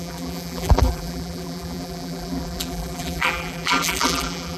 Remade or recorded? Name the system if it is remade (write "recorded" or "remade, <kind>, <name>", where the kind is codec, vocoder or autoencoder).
remade, vocoder, BigVGAN v2